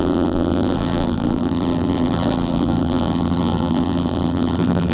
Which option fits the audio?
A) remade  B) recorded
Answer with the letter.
A